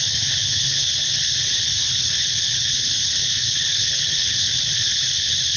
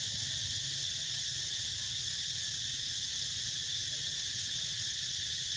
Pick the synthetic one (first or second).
first